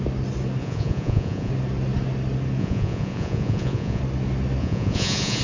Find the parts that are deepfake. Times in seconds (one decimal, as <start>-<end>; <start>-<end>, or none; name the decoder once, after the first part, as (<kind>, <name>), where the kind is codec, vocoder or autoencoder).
0.6-1.5 (vocoder, Vocos); 2.6-4.0; 4.6-5.4